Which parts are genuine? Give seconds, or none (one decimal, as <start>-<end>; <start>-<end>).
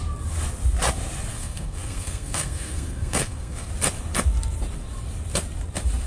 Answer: 0.0-1.3; 3.7-6.1